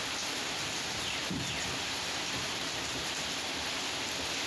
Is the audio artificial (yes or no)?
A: no